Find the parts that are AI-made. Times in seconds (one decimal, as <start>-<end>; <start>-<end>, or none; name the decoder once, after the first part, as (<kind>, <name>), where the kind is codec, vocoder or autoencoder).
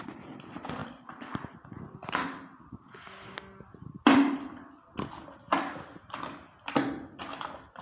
none